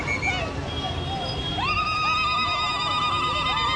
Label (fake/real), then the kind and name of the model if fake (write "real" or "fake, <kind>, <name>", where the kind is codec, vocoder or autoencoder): real